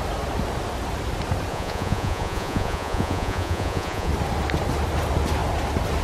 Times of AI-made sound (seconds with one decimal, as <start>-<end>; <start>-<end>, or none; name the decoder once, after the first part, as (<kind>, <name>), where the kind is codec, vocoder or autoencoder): 1.5-4.1 (vocoder, Vocos)